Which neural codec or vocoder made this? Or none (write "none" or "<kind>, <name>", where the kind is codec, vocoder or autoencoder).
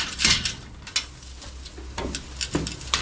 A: none